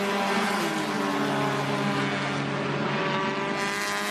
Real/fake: real